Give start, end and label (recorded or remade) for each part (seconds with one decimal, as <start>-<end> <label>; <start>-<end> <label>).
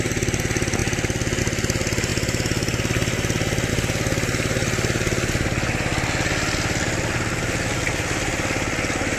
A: 0.0-9.2 recorded